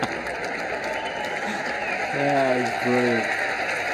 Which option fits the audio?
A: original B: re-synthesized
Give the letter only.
A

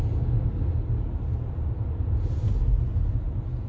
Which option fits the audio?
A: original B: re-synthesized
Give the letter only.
A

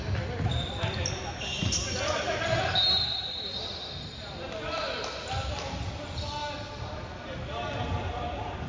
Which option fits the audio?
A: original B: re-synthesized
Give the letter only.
A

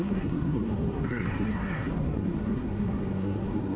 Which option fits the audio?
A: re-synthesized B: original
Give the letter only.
A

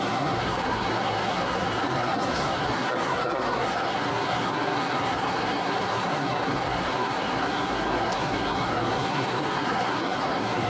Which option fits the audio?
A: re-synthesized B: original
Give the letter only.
A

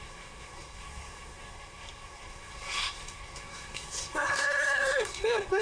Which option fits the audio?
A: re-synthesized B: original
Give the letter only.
A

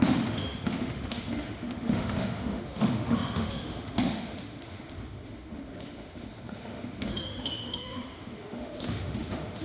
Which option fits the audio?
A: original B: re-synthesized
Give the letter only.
B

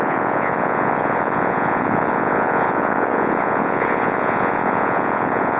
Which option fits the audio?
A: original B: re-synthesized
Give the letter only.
B